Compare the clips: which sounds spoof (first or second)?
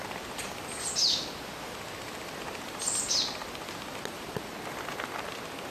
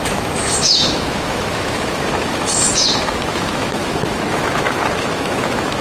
second